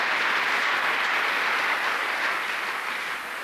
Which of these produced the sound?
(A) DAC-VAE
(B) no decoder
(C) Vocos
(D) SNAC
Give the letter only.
B